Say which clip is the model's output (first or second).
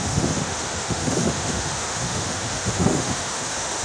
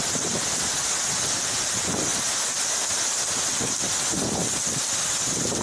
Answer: first